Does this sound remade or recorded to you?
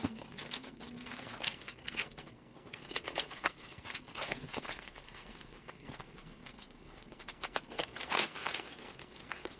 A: remade